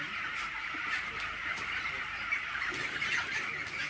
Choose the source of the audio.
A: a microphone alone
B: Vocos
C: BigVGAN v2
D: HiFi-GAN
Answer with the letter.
A